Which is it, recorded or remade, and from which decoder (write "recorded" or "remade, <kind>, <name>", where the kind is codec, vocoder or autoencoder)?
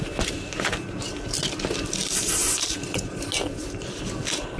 recorded